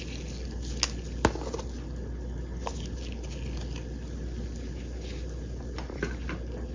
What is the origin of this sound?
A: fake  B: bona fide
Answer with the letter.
B